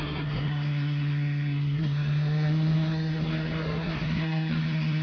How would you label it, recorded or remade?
remade